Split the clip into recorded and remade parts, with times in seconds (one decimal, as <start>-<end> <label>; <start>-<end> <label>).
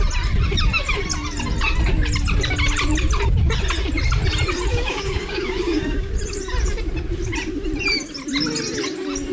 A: 0.0-4.7 recorded; 4.7-6.1 remade; 6.1-9.3 recorded